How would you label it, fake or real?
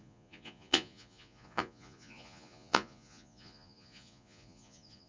fake